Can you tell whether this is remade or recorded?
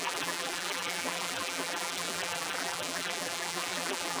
remade